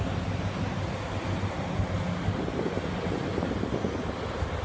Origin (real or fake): real